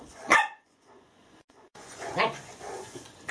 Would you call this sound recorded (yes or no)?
no